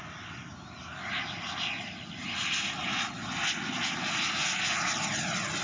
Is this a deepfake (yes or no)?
no